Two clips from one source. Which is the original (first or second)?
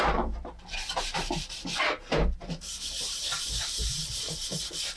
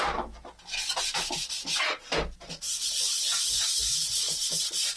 second